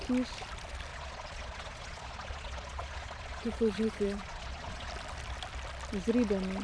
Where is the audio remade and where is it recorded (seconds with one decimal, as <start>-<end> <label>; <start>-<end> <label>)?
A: 0.0-0.9 recorded; 0.9-4.9 remade; 4.9-6.6 recorded